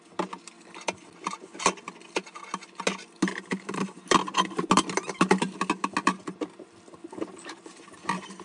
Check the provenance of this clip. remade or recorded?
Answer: recorded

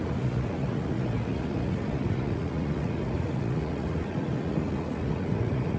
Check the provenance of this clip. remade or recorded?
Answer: remade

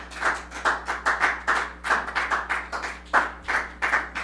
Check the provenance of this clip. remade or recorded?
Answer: recorded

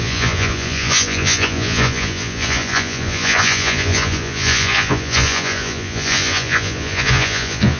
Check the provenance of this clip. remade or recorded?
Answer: remade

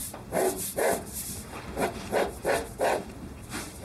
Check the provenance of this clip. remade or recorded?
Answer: remade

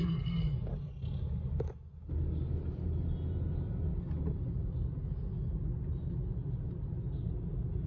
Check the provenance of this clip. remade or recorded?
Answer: recorded